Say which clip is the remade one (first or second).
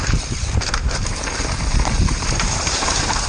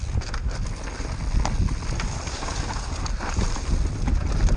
first